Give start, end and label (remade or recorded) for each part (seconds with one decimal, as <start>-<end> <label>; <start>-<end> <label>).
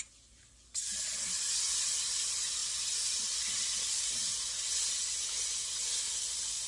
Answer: 0.0-2.6 remade; 2.6-3.2 recorded; 3.2-5.0 remade; 5.0-6.1 recorded; 6.1-6.7 remade